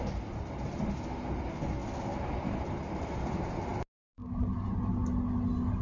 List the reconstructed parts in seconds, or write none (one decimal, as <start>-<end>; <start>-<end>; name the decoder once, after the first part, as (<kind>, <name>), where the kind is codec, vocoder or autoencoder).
none